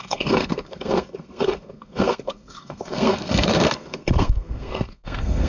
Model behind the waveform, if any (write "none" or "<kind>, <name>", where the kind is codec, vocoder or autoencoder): codec, SNAC